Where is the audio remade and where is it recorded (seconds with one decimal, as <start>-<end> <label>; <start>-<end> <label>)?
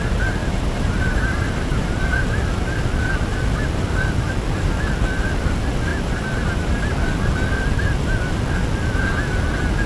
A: 0.0-0.4 recorded; 0.4-2.0 remade; 2.0-5.9 recorded; 5.9-7.0 remade; 7.0-9.9 recorded